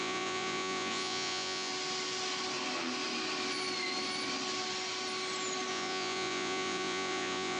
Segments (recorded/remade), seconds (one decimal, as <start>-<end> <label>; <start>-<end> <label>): 0.0-1.7 remade; 1.7-5.7 recorded; 5.7-7.6 remade